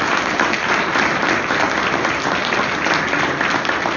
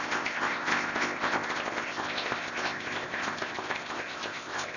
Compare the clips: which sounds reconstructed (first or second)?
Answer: second